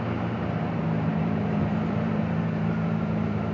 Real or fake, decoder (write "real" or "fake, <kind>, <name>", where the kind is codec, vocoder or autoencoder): fake, vocoder, BigVGAN v2